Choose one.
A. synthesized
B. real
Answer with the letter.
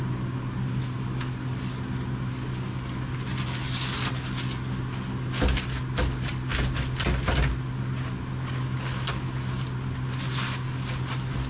B